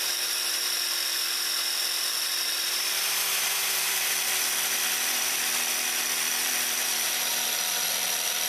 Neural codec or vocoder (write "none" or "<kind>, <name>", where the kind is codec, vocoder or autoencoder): vocoder, BigVGAN v2